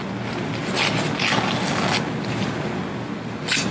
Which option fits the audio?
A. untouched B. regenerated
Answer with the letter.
A